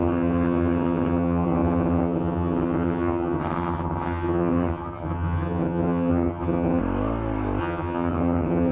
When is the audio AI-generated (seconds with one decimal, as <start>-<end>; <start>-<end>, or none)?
0.0-6.8; 7.6-8.7